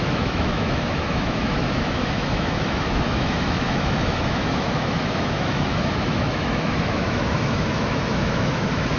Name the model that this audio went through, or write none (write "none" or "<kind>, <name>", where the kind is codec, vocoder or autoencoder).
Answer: autoencoder, DAC-VAE